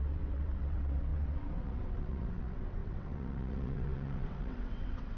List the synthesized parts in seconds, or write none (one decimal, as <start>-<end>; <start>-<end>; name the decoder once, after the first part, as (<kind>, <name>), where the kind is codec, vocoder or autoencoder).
0.0-5.2 (vocoder, WaveNeXt)